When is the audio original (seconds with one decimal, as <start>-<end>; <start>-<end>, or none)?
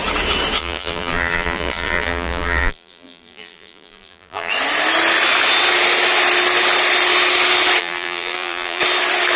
0.0-0.6; 4.5-7.8; 8.8-9.4